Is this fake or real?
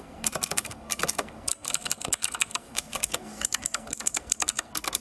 fake